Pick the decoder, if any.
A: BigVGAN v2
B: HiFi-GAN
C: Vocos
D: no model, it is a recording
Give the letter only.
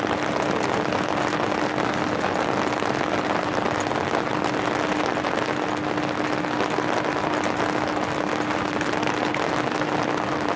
D